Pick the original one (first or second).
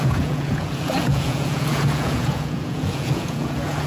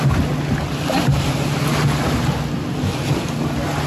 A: second